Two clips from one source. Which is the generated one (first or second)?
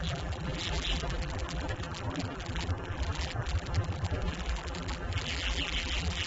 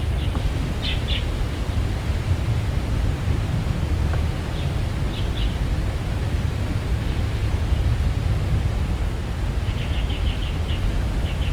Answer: first